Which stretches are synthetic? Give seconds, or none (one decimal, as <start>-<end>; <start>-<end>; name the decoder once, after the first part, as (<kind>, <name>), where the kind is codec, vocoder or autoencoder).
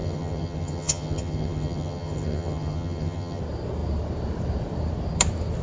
0.0-3.4 (vocoder, HiFi-GAN)